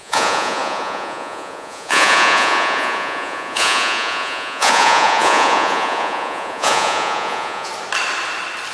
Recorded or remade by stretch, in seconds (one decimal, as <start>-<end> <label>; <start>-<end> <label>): 0.0-7.7 remade; 7.7-8.7 recorded